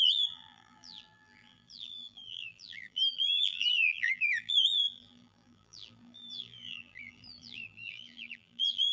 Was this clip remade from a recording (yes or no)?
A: yes